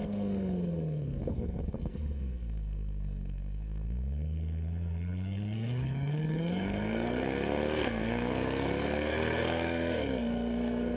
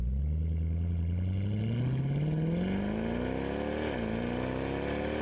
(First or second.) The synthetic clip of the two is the first